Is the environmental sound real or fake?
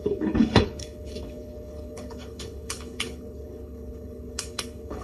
fake